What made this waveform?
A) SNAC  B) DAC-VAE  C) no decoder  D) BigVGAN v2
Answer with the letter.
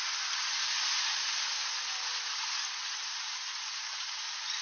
C